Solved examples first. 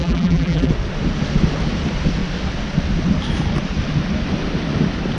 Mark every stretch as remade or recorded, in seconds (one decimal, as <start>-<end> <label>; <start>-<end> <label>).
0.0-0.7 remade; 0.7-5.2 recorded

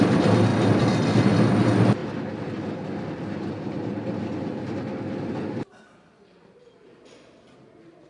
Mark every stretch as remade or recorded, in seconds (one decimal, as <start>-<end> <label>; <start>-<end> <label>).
0.0-8.1 recorded

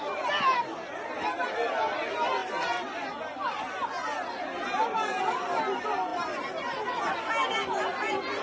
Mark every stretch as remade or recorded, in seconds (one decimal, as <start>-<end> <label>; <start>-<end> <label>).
0.0-8.4 recorded

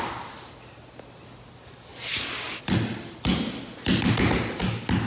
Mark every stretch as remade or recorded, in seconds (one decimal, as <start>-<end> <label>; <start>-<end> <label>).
0.0-5.1 recorded

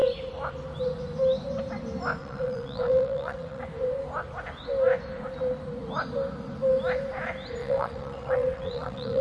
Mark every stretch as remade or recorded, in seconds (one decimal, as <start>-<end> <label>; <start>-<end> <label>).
0.0-2.2 recorded; 2.2-3.6 remade; 3.6-7.6 recorded; 7.6-9.2 remade

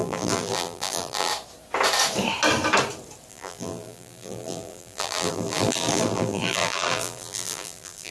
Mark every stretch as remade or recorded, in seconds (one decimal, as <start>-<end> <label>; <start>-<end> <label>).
0.0-1.3 remade; 1.3-3.3 recorded; 3.3-8.1 remade

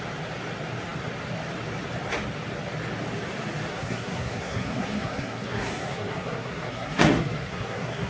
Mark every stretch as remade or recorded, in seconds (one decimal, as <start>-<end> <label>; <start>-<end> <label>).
0.0-3.7 recorded; 3.7-8.1 remade